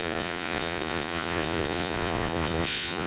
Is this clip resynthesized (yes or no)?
yes